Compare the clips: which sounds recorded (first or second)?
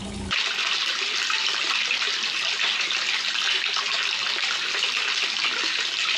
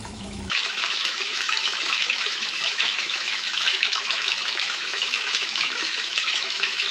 first